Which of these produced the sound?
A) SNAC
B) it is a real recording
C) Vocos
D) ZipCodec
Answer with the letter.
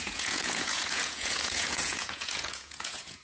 C